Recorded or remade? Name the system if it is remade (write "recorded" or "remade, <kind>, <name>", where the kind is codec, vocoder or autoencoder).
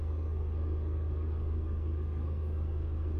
remade, codec, SNAC